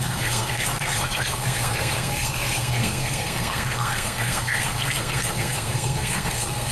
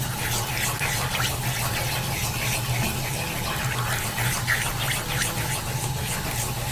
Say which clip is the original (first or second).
second